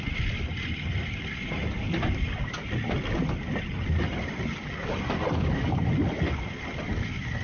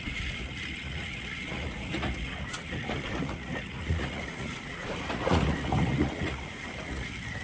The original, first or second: first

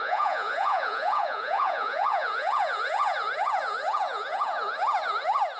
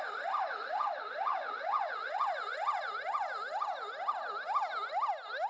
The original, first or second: second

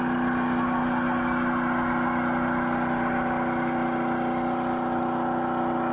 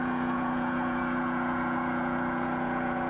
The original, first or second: first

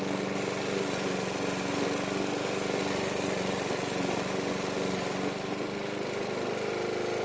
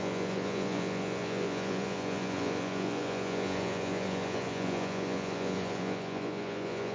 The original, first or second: first